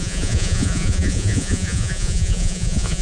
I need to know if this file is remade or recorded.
remade